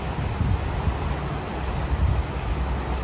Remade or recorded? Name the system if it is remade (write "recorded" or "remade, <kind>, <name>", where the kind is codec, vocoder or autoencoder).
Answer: recorded